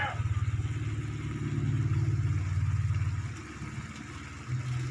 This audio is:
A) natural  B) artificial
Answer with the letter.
A